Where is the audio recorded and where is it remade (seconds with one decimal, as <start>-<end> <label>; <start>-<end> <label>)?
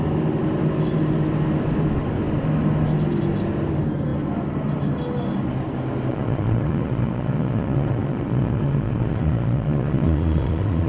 0.0-6.1 recorded; 6.1-10.9 remade